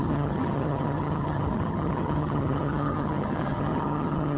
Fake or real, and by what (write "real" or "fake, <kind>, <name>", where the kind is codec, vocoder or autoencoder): fake, vocoder, HiFi-GAN